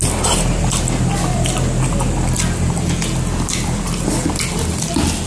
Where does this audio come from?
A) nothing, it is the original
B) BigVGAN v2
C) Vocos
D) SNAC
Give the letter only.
A